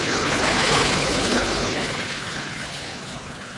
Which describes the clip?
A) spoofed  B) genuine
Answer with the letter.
A